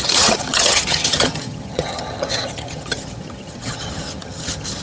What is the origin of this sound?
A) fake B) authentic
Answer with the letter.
A